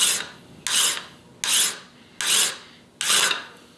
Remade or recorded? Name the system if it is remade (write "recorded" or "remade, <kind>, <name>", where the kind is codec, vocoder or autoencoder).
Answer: recorded